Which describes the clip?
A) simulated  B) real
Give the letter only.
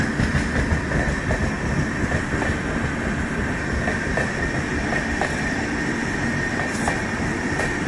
B